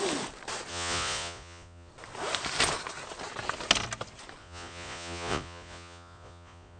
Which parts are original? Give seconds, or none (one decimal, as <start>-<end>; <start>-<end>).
0.0-0.7; 1.9-4.4